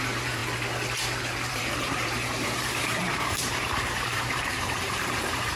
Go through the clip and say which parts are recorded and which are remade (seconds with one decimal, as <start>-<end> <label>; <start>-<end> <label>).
0.0-0.4 remade; 0.4-1.5 recorded; 1.5-5.6 remade